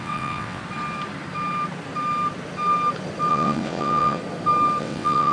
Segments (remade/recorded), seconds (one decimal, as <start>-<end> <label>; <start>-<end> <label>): 0.0-0.6 remade; 0.6-3.3 recorded; 3.3-4.2 remade; 4.2-4.8 recorded; 4.8-5.3 remade